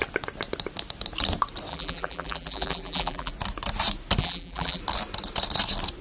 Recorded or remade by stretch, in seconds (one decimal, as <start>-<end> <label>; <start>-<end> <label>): 0.0-1.7 recorded; 1.7-3.3 remade; 3.3-4.2 recorded; 4.2-4.8 remade; 4.8-6.0 recorded